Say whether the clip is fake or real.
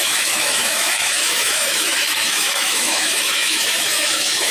fake